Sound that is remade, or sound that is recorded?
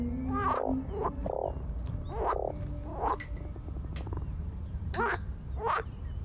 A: recorded